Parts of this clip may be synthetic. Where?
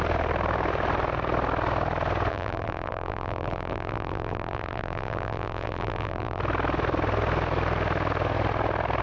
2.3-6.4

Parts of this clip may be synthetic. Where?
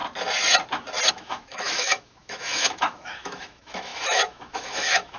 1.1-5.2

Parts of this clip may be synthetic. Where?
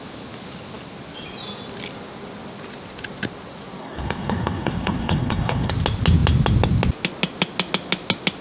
3.8-5.7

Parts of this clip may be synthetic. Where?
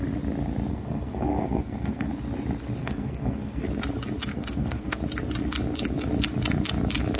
0.7-2.1; 2.8-3.6; 4.3-5.0